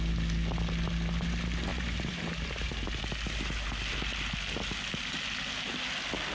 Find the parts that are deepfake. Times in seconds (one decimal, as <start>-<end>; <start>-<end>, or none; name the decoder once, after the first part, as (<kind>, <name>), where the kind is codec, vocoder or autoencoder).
1.7-3.0 (vocoder, BigVGAN v2)